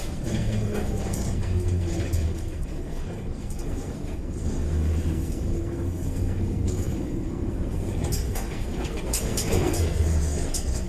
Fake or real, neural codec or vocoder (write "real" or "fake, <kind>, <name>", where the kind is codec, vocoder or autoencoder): fake, codec, SNAC